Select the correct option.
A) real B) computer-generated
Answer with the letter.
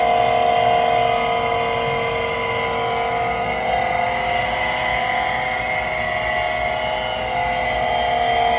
A